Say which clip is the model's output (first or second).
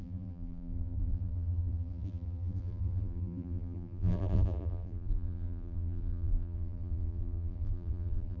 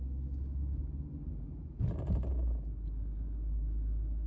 first